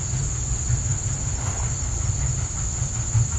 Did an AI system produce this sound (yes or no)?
no